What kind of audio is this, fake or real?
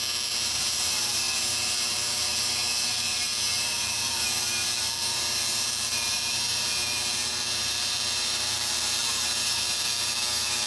fake